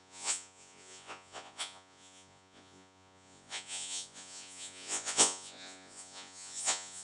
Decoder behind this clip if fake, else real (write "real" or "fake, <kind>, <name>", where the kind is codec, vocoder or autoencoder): fake, vocoder, Vocos